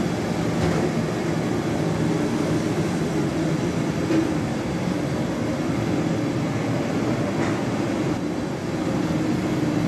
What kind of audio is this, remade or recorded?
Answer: recorded